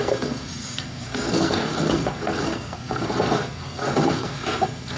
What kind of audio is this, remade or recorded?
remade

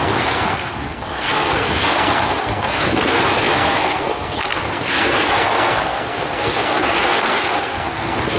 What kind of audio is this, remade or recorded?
remade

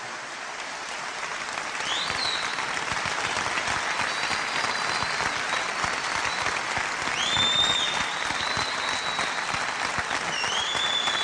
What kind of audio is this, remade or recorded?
recorded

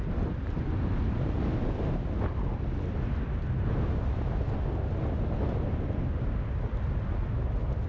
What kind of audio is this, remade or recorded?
recorded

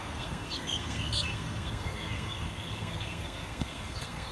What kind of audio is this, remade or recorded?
remade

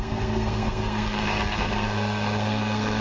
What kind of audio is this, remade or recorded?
remade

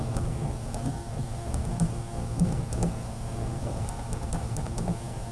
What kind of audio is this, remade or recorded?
remade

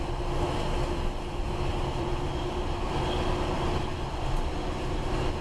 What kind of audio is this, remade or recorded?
recorded